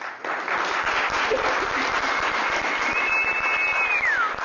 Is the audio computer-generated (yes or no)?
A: no